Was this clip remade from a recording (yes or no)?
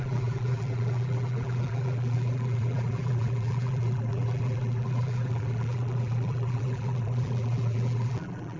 yes